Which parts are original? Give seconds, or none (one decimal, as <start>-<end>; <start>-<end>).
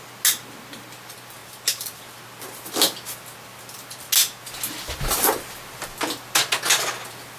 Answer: 0.0-1.4; 2.0-7.4